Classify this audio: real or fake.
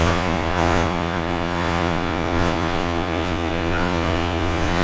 fake